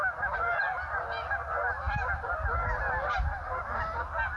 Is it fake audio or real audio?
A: real